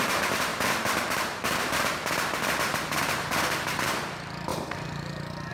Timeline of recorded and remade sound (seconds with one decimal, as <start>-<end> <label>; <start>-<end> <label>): 0.0-5.5 remade